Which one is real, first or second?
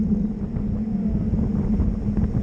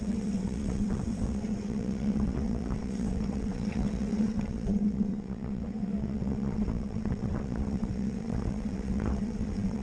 first